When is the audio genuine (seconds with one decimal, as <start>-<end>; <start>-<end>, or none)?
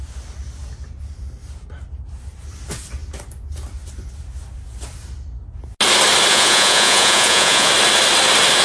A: 0.0-6.3; 7.7-8.6